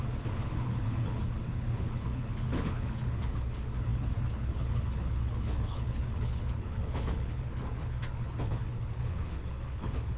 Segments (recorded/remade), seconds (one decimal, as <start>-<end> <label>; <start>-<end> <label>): 0.0-10.2 remade